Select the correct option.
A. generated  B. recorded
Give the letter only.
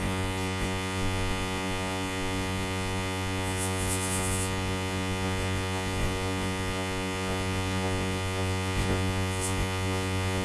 A